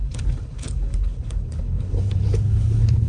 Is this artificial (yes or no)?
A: yes